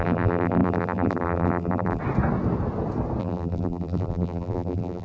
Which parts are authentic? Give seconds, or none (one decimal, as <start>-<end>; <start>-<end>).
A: 2.0-3.2